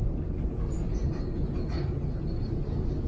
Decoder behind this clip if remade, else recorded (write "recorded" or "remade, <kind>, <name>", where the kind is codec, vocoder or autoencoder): recorded